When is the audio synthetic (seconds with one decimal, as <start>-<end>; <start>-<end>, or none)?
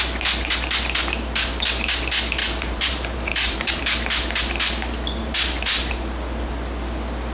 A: 2.4-3.8; 5.2-5.8